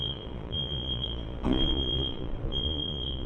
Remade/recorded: remade